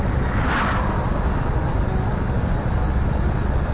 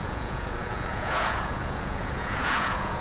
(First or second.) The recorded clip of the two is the first